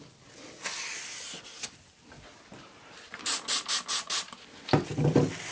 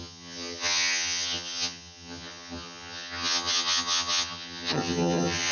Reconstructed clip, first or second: second